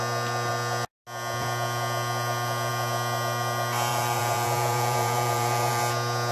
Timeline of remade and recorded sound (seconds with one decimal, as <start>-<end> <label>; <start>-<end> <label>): 0.0-3.9 recorded; 3.9-5.8 remade; 5.8-6.3 recorded